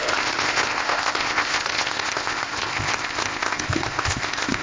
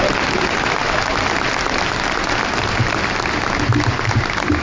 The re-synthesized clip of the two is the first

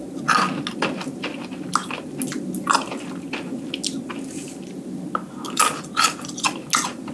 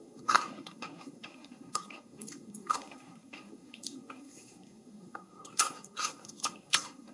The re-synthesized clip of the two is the second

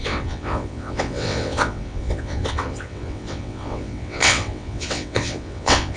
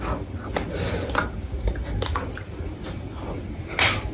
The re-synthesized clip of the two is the first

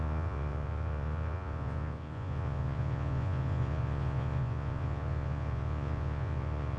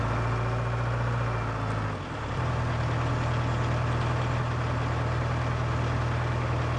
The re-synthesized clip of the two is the first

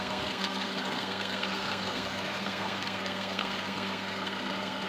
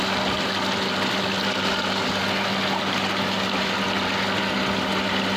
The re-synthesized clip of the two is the first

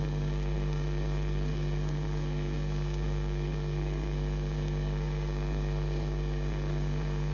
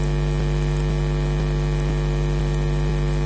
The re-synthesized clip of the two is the first